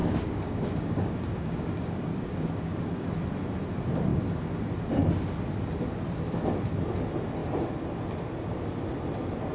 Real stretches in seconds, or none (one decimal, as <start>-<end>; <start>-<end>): 3.0-9.5